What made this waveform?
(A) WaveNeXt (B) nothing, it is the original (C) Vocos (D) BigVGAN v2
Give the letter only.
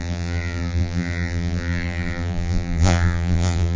D